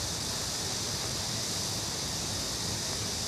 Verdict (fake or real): real